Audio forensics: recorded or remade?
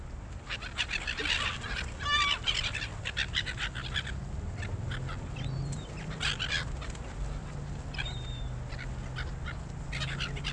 recorded